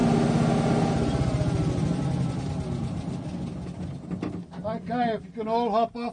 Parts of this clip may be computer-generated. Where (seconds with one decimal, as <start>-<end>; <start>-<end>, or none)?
none